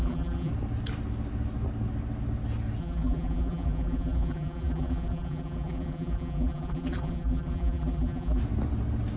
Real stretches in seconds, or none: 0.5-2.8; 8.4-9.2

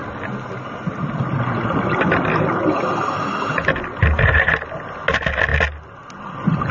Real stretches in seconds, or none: 0.0-6.7

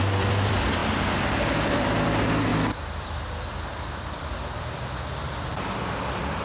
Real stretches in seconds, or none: 0.8-1.7

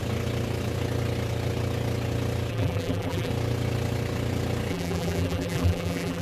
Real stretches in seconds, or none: 0.0-2.5; 3.3-4.7